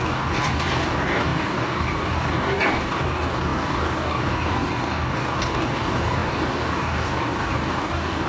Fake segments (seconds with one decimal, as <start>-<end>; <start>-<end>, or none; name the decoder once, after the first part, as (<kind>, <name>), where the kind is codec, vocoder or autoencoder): 0.0-8.3 (codec, DAC)